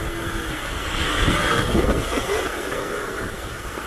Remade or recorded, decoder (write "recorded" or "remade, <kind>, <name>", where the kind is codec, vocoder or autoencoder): remade, codec, SNAC